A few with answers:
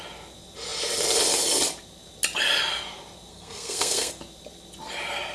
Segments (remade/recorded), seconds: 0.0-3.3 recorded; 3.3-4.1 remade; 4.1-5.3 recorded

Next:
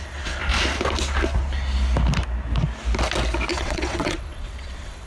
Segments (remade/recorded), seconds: 0.0-0.4 remade; 0.4-3.5 recorded; 3.5-5.1 remade